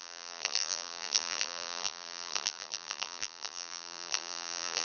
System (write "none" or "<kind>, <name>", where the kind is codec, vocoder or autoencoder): vocoder, BigVGAN v2